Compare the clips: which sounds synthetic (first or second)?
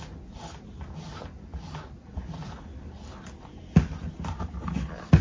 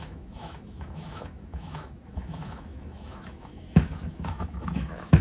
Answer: second